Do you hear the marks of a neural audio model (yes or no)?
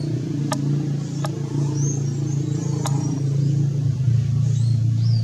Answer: no